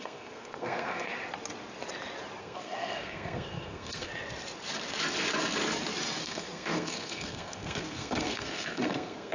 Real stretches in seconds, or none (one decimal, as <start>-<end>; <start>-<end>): 1.1-2.4; 4.1-6.2